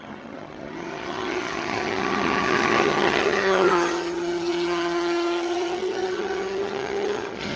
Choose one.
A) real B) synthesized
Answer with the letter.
B